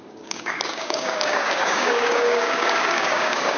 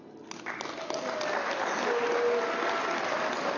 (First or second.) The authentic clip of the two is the second